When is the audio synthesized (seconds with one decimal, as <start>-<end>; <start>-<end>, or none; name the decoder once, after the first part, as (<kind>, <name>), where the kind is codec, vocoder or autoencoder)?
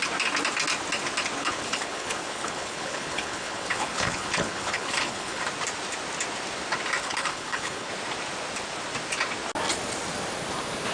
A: 1.4-5.4 (codec, HILCodec); 7.0-7.9